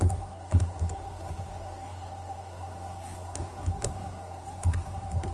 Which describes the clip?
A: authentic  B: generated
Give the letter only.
B